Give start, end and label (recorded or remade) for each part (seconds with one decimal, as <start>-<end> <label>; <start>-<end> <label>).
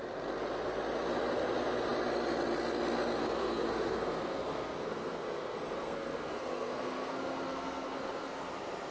0.0-3.2 recorded; 3.2-8.4 remade; 8.4-8.9 recorded